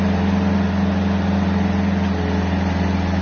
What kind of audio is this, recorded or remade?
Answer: recorded